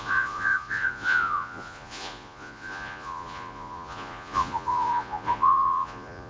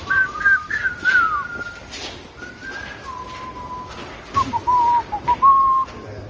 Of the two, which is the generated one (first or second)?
first